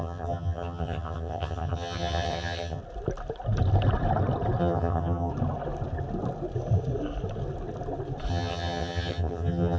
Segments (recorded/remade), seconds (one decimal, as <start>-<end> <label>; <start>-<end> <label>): 0.0-2.8 remade; 2.8-4.6 recorded; 4.6-5.3 remade; 5.3-8.3 recorded; 8.3-9.8 remade